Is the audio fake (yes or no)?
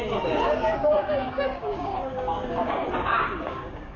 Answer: yes